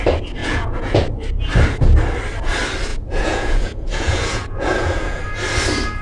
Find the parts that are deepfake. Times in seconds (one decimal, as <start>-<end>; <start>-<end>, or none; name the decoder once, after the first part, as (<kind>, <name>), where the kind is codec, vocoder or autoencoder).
0.4-1.0 (vocoder, Vocos); 2.9-5.2